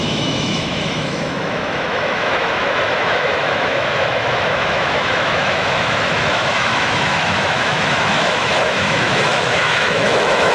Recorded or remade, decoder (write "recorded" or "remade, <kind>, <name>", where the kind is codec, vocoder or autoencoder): remade, autoencoder, DAC-VAE